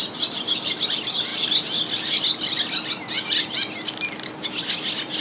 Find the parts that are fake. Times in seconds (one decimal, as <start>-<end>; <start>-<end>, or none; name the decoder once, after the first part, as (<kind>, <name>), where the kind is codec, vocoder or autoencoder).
none